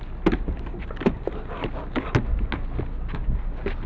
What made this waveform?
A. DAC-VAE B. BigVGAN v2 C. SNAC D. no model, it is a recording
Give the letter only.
D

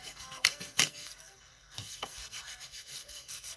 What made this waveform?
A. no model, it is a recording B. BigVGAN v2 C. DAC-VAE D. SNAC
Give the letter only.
D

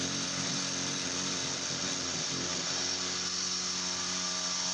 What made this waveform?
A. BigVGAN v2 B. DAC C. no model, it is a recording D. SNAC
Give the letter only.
C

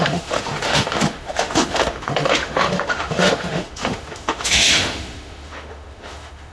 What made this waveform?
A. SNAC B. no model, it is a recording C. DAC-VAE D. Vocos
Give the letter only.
C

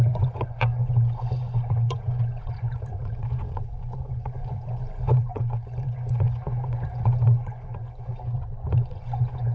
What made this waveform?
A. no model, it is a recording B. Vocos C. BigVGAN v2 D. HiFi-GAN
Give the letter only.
B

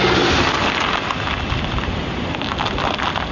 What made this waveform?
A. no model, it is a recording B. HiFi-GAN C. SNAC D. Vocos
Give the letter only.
A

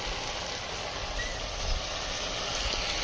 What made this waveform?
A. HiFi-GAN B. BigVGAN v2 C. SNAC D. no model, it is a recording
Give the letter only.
D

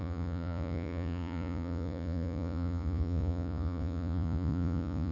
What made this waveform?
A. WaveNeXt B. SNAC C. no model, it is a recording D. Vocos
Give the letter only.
D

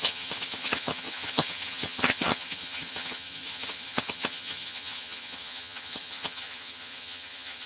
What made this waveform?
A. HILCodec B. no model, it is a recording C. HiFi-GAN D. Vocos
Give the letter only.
C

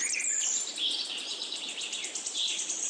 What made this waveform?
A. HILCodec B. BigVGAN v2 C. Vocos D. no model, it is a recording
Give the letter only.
B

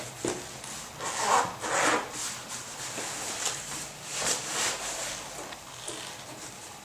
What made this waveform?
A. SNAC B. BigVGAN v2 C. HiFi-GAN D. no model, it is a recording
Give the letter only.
D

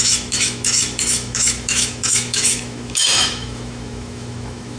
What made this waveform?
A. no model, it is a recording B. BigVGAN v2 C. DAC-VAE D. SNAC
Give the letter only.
C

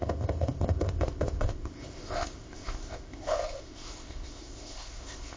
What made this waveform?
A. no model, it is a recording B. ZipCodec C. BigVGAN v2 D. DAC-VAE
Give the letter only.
B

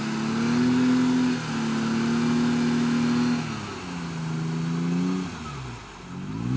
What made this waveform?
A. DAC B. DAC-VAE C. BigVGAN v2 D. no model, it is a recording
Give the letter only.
D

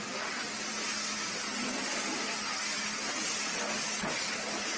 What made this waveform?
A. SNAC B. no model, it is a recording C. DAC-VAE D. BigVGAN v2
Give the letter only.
B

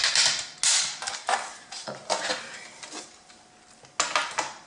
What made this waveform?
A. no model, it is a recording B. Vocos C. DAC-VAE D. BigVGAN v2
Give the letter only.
A